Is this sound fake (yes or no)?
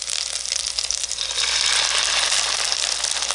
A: no